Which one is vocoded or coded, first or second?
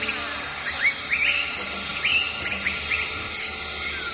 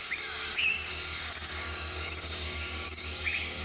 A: second